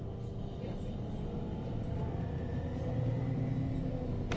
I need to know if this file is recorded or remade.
recorded